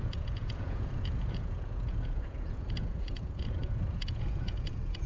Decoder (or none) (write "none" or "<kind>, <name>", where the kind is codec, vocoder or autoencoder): vocoder, Vocos